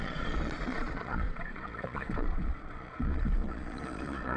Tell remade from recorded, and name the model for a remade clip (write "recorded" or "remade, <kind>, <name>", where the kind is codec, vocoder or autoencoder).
remade, vocoder, Vocos